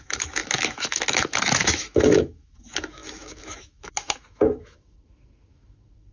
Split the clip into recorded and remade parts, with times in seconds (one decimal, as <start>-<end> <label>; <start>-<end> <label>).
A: 0.0-6.1 remade